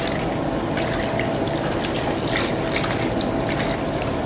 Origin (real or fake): fake